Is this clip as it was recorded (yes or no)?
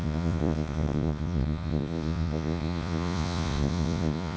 no